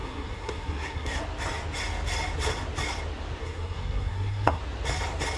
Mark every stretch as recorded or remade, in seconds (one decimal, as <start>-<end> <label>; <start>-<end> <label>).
0.0-1.2 remade; 1.2-3.4 recorded; 3.4-4.6 remade; 4.6-5.4 recorded